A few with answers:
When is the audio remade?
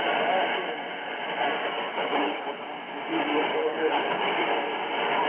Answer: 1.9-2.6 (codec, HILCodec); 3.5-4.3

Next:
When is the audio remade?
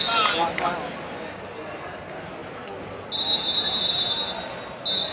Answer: none